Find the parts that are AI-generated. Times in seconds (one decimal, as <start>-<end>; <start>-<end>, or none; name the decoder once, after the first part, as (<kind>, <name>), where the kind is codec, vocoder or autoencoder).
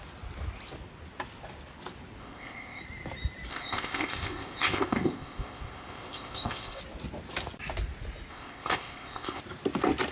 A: 2.2-2.8 (codec, ZipCodec); 3.5-6.8; 8.3-9.4